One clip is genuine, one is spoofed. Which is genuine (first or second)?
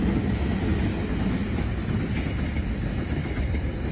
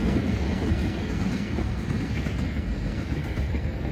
first